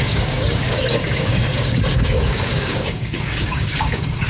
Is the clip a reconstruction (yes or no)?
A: yes